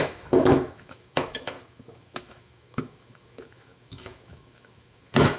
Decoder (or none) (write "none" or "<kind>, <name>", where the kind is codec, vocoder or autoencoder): autoencoder, DAC-VAE